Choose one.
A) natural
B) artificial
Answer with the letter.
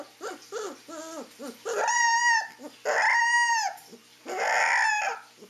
A